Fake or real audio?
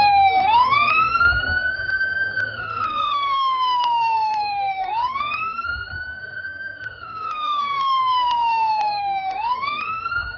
fake